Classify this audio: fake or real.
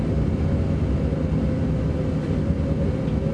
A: real